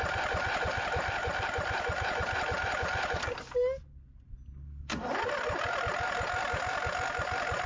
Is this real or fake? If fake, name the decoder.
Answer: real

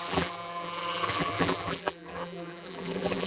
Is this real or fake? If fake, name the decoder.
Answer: fake, vocoder, BigVGAN v2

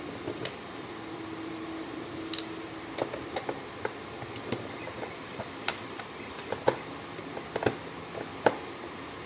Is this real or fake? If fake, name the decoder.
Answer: fake, vocoder, BigVGAN v2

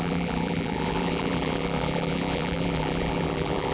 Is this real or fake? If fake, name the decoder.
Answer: fake, vocoder, BigVGAN v2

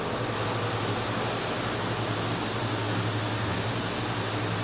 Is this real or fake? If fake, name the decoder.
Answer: real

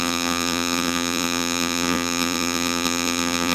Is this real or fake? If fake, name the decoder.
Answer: fake, vocoder, BigVGAN v2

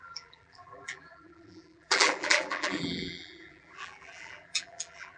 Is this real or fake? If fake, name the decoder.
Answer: fake, vocoder, BigVGAN v2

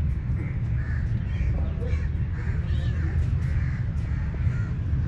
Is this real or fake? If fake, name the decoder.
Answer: real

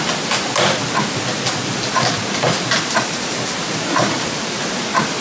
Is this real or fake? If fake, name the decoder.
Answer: real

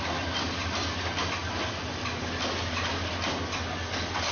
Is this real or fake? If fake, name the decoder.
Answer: real